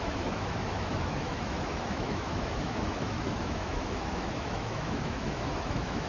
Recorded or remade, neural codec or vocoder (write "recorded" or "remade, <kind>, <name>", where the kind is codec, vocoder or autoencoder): remade, autoencoder, DAC-VAE